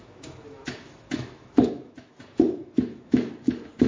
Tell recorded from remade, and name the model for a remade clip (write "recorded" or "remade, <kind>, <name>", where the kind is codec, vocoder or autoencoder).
remade, autoencoder, DAC-VAE